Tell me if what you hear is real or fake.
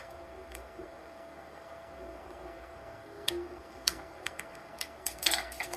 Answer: fake